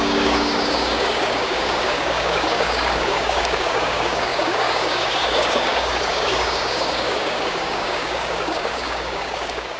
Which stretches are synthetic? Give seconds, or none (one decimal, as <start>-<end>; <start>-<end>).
0.0-9.8